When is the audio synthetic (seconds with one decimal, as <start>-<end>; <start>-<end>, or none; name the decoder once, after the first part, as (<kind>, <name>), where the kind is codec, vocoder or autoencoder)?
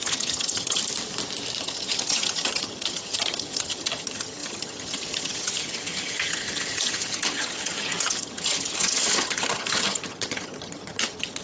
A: 0.0-0.8 (vocoder, HiFi-GAN); 1.6-11.4